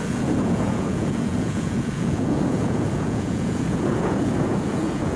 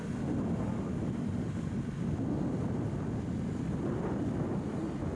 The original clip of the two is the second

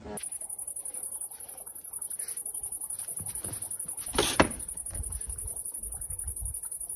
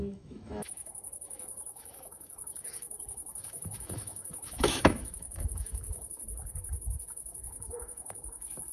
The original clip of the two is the first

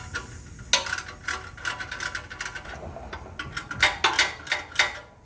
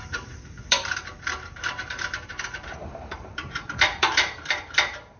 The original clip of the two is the first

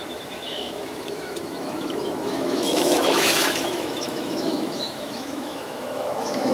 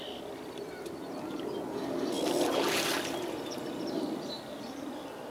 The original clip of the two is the second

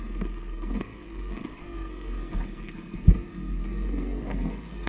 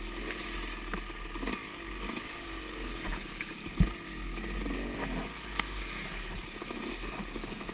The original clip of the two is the second